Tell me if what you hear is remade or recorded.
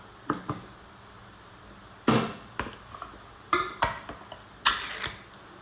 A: recorded